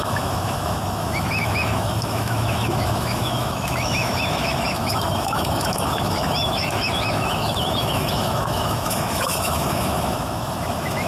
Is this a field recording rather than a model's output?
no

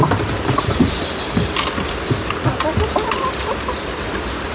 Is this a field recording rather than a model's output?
yes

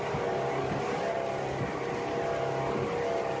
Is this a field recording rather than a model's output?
yes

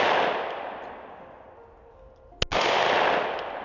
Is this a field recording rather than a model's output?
yes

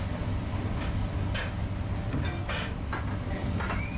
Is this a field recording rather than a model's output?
yes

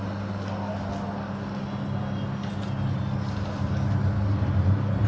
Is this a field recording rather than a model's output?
yes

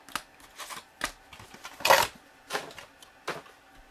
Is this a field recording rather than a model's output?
yes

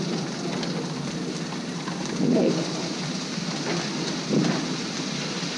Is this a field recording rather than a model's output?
yes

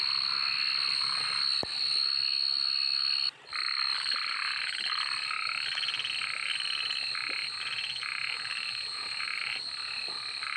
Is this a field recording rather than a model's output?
yes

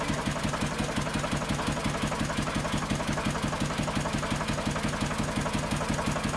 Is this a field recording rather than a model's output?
yes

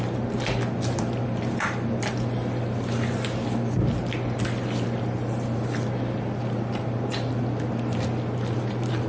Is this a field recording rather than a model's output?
no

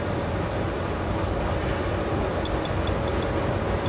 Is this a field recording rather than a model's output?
yes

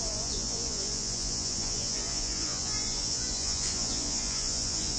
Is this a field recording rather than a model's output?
no